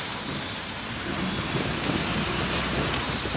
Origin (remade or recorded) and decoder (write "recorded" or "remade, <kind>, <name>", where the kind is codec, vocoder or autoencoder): remade, vocoder, BigVGAN v2